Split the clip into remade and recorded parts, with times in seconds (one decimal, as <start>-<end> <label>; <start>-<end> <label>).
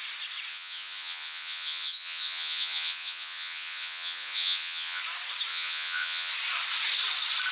0.0-0.5 recorded; 0.5-5.0 remade; 5.0-5.5 recorded; 5.5-6.3 remade; 6.3-7.5 recorded